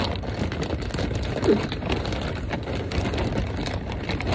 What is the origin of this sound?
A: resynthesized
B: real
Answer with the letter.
B